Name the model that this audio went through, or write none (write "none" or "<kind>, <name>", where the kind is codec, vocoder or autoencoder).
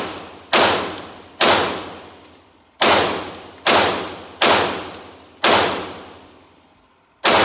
none